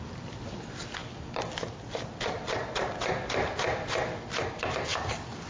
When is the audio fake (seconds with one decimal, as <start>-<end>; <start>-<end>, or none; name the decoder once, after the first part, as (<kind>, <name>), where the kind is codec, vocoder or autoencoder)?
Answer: none